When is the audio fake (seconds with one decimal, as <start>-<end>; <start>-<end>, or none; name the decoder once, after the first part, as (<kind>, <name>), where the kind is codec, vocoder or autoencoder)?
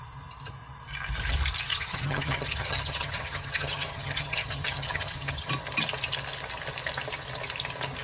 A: 1.7-5.5 (vocoder, HiFi-GAN)